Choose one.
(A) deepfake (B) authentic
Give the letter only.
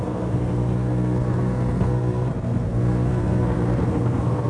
A